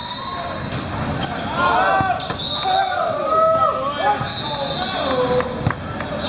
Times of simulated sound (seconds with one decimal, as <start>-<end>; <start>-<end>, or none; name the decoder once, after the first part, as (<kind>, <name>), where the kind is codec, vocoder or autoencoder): none